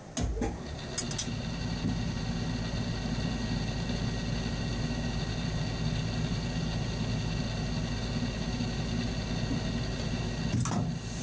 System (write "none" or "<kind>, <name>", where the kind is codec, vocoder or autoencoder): none